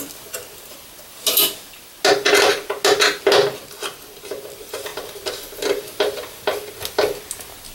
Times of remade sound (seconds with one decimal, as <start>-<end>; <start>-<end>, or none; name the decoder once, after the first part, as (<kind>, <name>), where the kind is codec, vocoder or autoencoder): none